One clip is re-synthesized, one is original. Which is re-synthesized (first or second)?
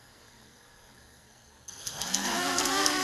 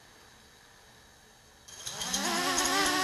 first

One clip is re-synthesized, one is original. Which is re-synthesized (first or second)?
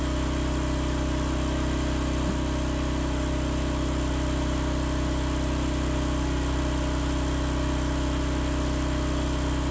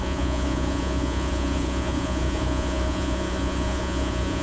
second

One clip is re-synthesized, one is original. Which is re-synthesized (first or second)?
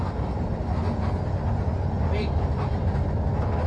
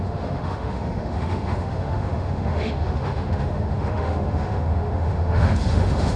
second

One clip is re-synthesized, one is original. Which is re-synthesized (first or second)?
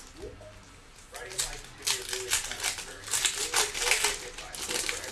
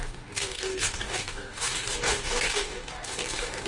second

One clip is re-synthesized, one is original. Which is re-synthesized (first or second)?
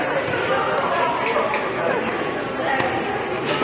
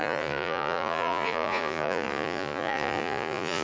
second